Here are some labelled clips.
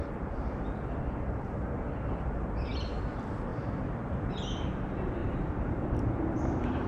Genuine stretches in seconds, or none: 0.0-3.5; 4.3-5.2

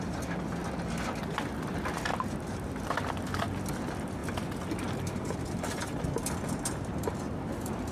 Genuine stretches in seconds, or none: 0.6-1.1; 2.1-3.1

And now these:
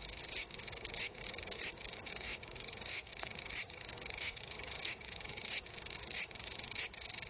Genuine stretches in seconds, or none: none